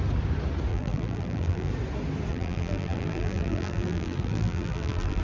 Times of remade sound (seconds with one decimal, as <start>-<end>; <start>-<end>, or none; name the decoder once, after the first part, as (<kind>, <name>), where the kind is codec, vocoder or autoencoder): 0.7-1.7 (vocoder, BigVGAN v2); 2.3-5.2